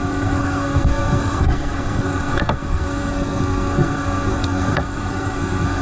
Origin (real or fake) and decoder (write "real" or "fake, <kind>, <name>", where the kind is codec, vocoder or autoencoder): fake, codec, SNAC